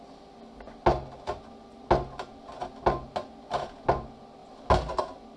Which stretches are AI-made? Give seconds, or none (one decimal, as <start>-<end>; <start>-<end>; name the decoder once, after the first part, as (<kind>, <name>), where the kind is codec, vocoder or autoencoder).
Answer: none